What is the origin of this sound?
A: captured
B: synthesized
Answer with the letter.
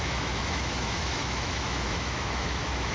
B